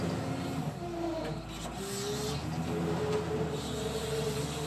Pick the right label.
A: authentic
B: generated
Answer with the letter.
A